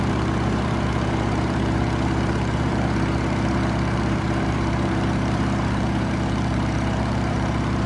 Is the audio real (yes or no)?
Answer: no